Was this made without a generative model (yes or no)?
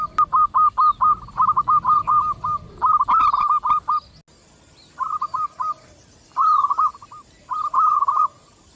yes